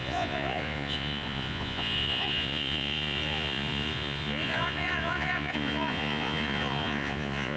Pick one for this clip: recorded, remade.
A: remade